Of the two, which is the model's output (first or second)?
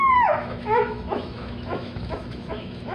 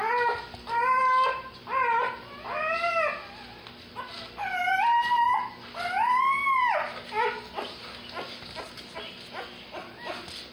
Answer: first